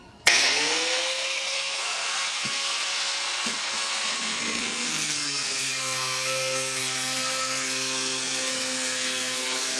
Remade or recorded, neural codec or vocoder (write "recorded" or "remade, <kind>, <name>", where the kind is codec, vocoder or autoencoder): remade, codec, SNAC